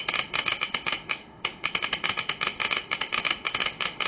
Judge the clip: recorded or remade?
remade